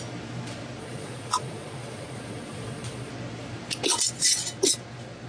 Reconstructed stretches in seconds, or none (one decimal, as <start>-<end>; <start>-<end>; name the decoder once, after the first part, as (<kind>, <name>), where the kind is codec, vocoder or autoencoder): 0.8-3.1 (vocoder, Vocos)